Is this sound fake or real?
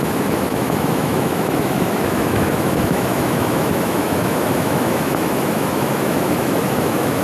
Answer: fake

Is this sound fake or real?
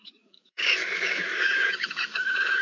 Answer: fake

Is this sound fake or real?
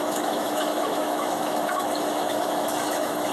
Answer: fake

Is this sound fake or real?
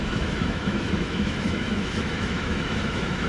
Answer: fake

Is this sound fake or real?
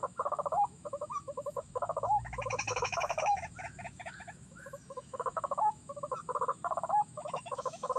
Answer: fake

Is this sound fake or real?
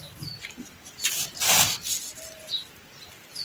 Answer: real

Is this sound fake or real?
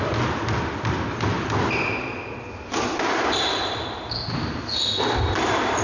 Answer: real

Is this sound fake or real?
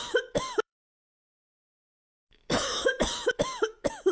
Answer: fake